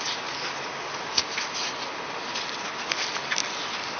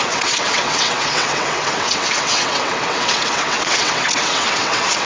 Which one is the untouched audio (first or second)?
first